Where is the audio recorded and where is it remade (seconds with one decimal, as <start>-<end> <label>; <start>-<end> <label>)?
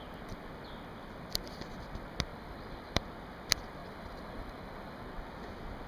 0.0-2.3 recorded; 2.3-3.0 remade; 3.0-3.8 recorded; 3.8-5.1 remade; 5.1-5.9 recorded